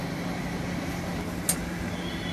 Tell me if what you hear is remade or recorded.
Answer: recorded